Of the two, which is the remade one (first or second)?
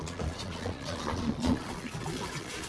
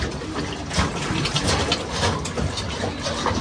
first